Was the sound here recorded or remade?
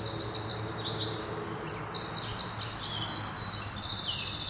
recorded